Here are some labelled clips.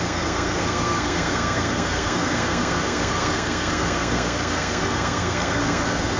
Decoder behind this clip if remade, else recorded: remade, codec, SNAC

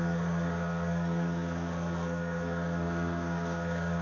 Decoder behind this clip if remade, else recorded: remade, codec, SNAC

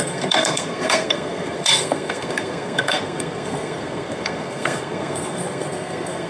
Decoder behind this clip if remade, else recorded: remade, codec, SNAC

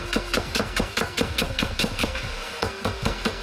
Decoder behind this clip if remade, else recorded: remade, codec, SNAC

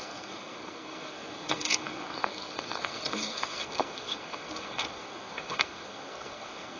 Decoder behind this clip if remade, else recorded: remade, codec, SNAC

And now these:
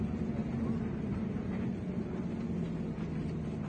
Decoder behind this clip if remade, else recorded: recorded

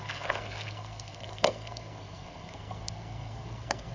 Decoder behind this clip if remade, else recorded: remade, codec, SNAC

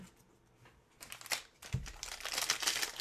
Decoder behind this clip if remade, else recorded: recorded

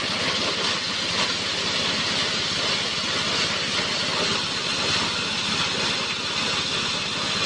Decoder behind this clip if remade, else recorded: recorded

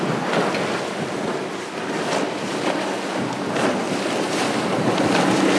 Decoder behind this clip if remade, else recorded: recorded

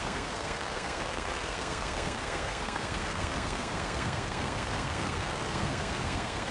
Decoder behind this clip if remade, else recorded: remade, codec, SNAC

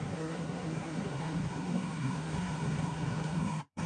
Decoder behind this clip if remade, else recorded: remade, codec, SNAC